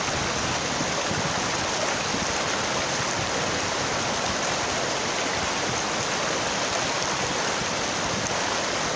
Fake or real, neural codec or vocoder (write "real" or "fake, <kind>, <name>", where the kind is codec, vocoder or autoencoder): real